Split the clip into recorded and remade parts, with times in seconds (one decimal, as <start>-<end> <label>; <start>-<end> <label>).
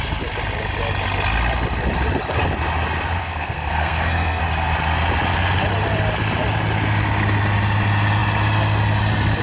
0.0-3.2 recorded; 3.2-4.4 remade; 4.4-9.4 recorded